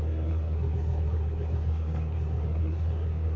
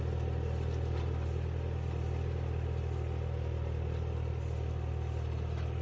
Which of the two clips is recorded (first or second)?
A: second